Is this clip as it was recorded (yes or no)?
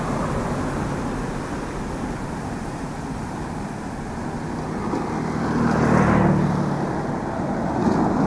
yes